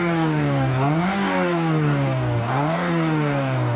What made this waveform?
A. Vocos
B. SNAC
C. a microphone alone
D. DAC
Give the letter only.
D